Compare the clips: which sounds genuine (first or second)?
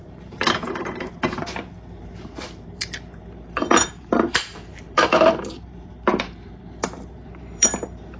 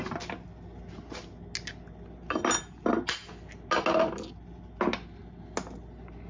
second